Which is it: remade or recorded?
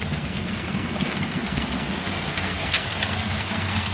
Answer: remade